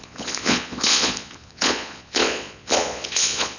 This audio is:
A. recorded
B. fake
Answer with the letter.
B